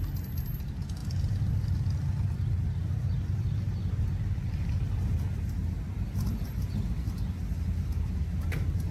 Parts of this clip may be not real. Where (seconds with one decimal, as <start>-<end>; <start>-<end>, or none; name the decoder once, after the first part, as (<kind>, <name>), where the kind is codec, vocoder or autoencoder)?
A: none

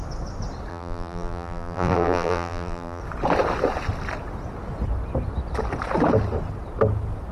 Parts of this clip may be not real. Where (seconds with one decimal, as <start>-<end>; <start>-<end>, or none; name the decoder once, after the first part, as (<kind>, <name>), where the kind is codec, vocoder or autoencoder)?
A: 0.7-3.0 (vocoder, BigVGAN v2)

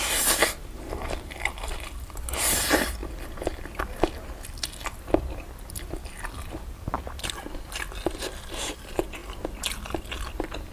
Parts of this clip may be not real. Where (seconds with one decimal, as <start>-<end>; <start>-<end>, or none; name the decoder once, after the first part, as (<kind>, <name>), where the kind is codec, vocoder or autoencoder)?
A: 0.0-9.2 (vocoder, BigVGAN v2); 9.7-10.7

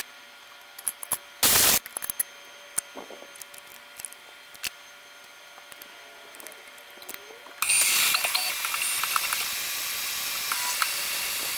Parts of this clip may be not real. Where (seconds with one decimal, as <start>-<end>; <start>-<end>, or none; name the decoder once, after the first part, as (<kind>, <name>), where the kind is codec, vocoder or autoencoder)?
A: none

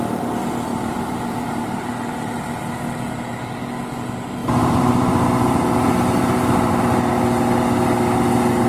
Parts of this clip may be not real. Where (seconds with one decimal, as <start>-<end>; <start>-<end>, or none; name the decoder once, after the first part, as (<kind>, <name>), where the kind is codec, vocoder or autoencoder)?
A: 0.7-1.9 (vocoder, BigVGAN v2); 4.4-7.1

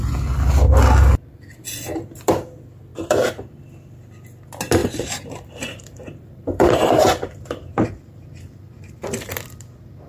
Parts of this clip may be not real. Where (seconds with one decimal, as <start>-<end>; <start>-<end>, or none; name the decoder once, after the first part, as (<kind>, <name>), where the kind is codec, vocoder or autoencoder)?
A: 2.9-3.6 (vocoder, BigVGAN v2); 4.8-9.3

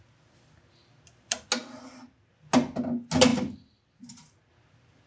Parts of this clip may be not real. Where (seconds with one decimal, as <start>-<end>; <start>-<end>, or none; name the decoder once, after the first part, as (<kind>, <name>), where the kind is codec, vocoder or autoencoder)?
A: none

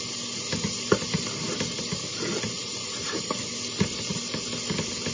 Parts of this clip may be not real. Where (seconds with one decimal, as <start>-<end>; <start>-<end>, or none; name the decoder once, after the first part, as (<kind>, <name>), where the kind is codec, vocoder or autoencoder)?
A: 2.6-3.3 (vocoder, BigVGAN v2)